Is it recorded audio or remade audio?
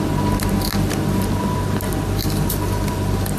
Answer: recorded